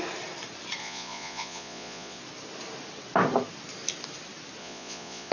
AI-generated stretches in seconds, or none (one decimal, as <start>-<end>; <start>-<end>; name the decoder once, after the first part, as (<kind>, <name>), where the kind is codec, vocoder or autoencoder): 0.8-2.2 (vocoder, Vocos); 4.6-5.3